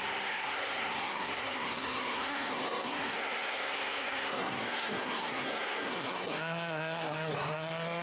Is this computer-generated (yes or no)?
yes